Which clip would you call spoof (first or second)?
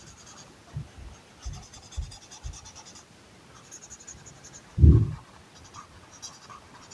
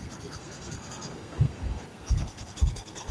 second